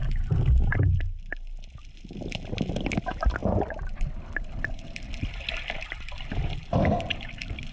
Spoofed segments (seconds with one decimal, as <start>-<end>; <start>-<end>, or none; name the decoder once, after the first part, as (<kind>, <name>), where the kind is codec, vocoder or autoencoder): none